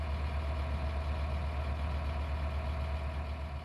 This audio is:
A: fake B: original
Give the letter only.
B